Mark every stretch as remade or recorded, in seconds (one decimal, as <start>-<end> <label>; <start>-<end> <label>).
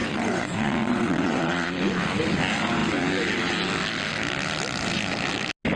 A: 0.0-1.7 remade; 1.7-5.8 recorded